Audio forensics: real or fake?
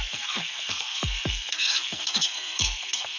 fake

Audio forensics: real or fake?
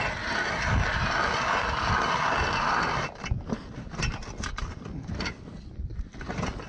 real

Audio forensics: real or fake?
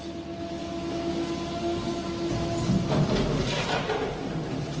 real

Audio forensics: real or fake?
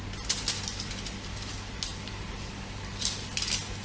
real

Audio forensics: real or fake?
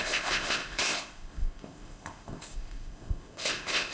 fake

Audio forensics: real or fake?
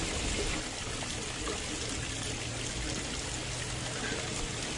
real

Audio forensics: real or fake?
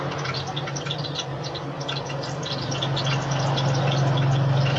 real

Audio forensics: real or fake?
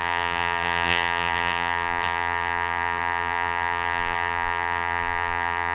fake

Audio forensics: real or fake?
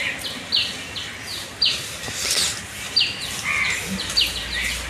real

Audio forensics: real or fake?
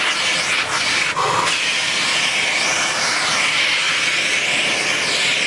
real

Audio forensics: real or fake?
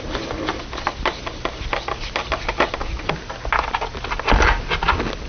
real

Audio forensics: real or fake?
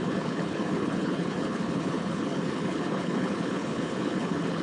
fake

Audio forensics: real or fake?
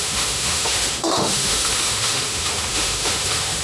fake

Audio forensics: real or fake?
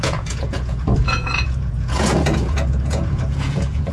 fake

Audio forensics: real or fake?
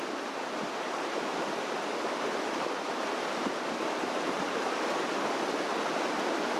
real